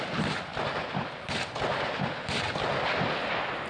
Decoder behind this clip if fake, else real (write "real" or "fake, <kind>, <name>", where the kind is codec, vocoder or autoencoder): real